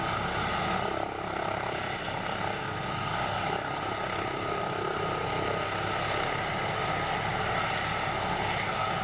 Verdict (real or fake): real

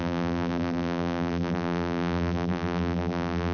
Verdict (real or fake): fake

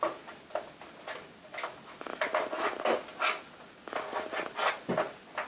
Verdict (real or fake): real